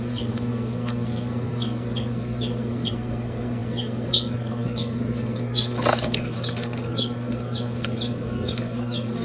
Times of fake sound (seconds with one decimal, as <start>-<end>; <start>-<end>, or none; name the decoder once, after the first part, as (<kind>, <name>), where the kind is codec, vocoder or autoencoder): 0.0-9.2 (codec, SNAC)